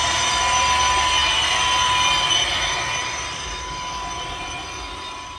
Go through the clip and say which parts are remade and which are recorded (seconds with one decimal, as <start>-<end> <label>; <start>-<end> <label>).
0.0-5.4 recorded